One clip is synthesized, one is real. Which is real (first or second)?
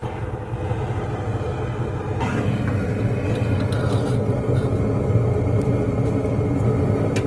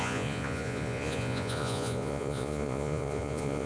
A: first